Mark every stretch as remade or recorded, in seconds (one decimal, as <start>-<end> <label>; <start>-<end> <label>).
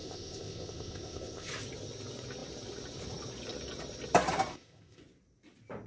0.0-1.5 remade; 1.5-4.5 recorded; 4.5-5.0 remade; 5.0-5.9 recorded